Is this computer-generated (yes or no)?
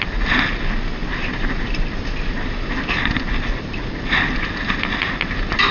no